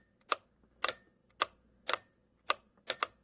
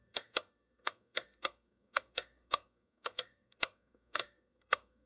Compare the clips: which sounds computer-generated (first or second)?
second